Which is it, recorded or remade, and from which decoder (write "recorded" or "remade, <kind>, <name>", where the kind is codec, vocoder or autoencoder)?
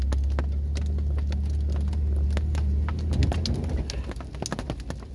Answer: recorded